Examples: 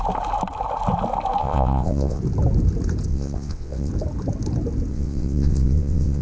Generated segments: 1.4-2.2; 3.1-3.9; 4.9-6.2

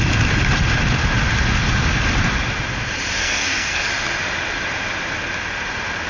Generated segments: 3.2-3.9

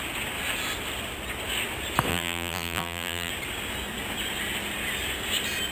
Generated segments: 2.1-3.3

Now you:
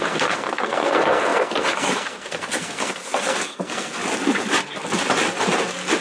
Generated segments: 0.0-4.0

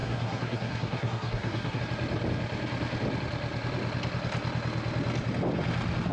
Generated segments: 0.0-1.8